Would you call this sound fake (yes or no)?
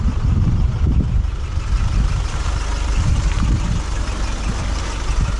no